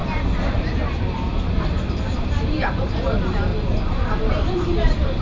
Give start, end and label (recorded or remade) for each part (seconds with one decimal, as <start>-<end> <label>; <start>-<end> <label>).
0.0-2.1 recorded; 2.1-3.5 remade; 3.5-4.1 recorded; 4.1-5.2 remade